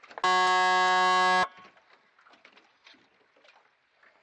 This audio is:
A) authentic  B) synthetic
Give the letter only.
A